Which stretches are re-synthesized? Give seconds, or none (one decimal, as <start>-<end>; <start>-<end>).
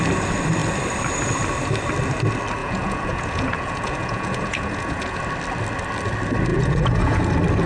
2.6-5.2; 6.5-7.3